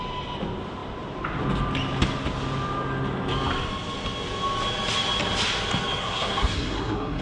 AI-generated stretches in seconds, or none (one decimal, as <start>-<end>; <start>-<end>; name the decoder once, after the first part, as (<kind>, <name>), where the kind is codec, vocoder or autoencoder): 6.0-7.2 (codec, SNAC)